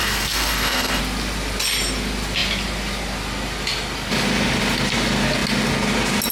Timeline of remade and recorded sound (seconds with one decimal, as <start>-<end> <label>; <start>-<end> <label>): 0.0-1.0 remade; 1.0-6.3 recorded